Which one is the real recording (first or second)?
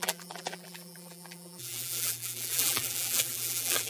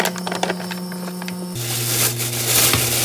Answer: second